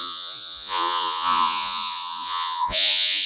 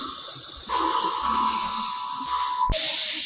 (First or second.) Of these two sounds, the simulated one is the first